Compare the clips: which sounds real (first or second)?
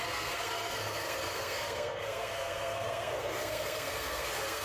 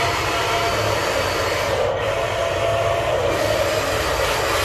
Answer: second